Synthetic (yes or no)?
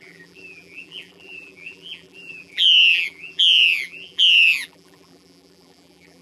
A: yes